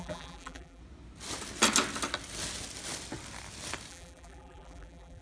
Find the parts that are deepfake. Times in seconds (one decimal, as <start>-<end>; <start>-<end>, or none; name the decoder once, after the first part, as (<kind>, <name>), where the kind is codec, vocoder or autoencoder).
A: 0.0-0.8 (vocoder, BigVGAN v2); 3.9-5.2